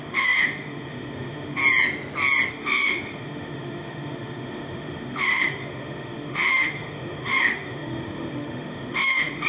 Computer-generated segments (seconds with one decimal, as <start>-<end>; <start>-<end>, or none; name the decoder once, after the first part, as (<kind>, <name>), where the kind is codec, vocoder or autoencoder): 0.0-1.6 (autoencoder, DAC-VAE); 2.5-9.5